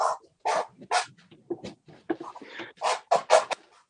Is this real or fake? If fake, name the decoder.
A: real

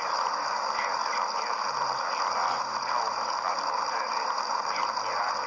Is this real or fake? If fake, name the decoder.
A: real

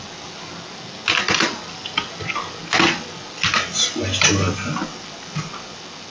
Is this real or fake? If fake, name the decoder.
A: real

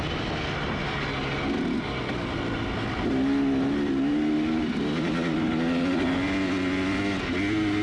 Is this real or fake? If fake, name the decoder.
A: real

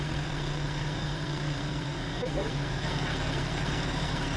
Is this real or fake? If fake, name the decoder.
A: fake, codec, SNAC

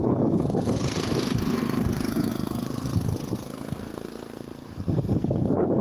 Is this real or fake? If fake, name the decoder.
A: fake, codec, SNAC